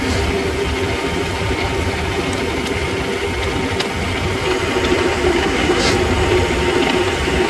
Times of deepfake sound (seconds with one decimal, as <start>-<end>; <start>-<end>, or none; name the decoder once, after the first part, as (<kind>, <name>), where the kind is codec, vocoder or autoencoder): 5.3-5.9 (codec, SNAC)